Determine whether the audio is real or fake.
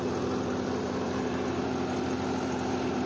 fake